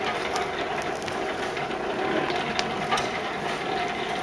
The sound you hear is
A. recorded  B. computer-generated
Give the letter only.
A